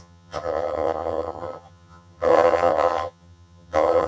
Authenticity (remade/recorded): remade